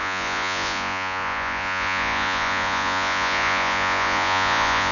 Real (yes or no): no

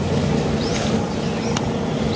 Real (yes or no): yes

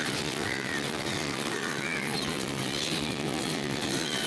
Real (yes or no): no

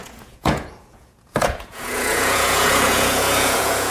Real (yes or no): no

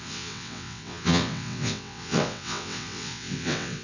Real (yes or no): no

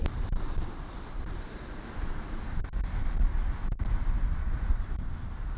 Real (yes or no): no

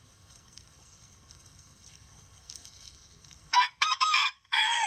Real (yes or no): no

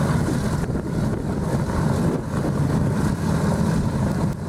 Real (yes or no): yes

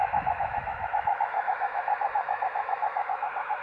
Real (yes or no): no